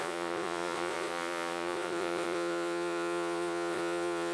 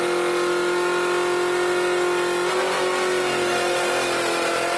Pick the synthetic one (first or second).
first